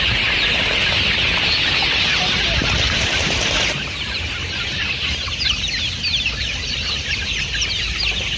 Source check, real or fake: real